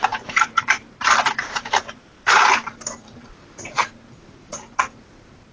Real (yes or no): no